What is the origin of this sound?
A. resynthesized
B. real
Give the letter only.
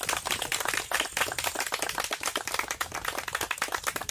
B